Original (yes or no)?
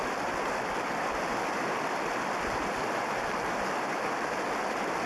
yes